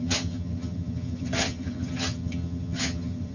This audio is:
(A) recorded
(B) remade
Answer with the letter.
B